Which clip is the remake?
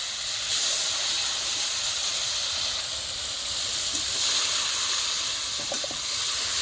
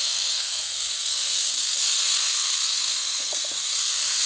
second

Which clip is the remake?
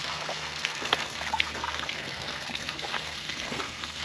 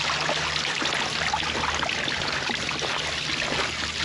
first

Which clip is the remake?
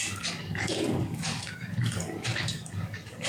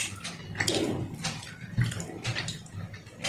first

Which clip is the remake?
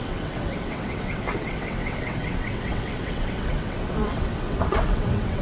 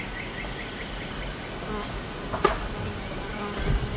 first